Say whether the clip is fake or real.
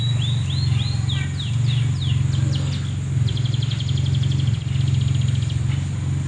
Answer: real